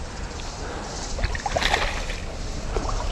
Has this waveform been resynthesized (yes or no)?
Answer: no